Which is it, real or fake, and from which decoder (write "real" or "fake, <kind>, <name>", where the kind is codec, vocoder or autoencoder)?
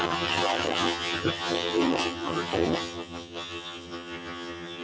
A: fake, vocoder, HiFi-GAN